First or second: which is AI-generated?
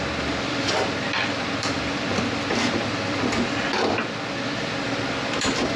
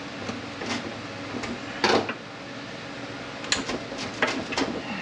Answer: first